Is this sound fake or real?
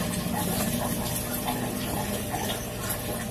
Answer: real